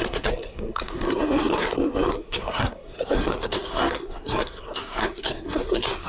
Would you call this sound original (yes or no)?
no